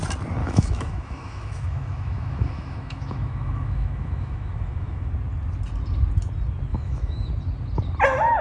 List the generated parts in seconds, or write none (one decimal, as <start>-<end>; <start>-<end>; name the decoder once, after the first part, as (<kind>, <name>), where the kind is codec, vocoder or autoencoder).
0.4-5.1 (autoencoder, DAC-VAE); 6.7-7.3